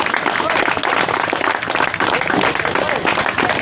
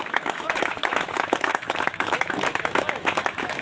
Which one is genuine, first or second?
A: first